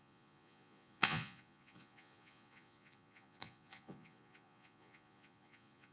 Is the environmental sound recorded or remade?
remade